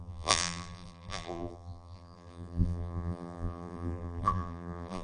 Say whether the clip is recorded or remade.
remade